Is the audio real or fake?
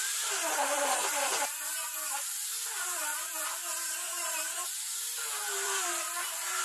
fake